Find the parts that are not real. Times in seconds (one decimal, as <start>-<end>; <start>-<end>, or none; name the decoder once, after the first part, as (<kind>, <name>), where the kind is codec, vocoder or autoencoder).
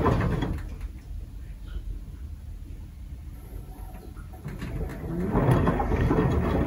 none